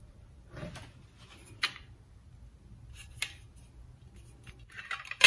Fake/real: real